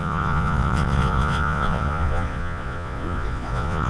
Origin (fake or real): fake